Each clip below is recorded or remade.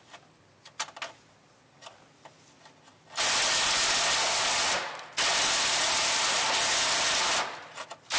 recorded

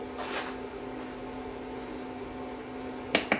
recorded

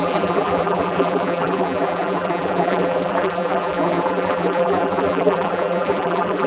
remade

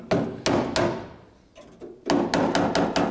recorded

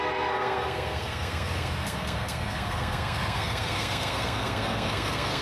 remade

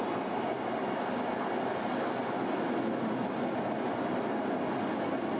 recorded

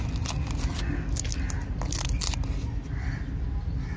recorded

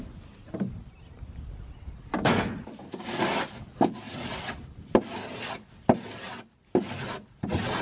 recorded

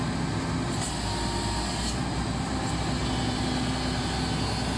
recorded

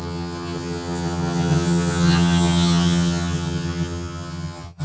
remade